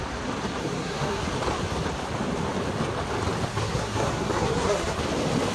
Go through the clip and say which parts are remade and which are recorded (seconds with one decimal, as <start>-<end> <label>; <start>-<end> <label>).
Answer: 0.0-0.6 recorded; 0.6-1.2 remade; 1.2-3.5 recorded; 3.5-5.0 remade; 5.0-5.5 recorded